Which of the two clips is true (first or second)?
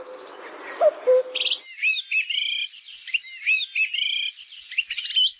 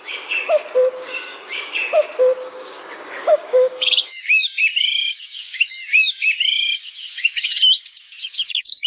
first